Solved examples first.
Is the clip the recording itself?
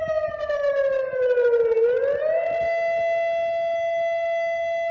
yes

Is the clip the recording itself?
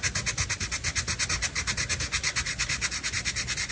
yes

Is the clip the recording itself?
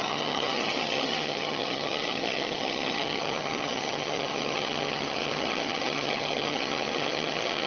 no